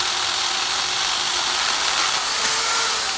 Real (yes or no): yes